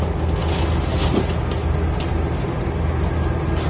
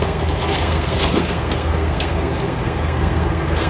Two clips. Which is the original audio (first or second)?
first